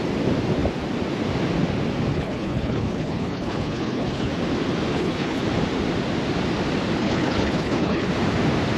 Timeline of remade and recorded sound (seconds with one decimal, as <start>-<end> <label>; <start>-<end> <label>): 0.0-2.1 recorded; 2.1-4.3 remade; 4.3-4.9 recorded; 4.9-5.4 remade; 5.4-7.0 recorded; 7.0-8.1 remade; 8.1-8.8 recorded